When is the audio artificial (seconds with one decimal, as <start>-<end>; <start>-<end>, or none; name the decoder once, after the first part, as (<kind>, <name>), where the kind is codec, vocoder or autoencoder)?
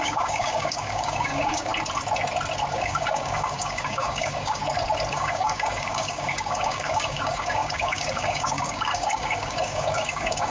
0.0-1.7 (codec, DAC); 2.7-4.6; 5.1-10.5